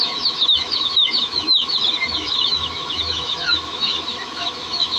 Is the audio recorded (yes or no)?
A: no